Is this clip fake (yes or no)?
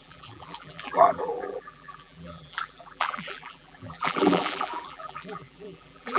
yes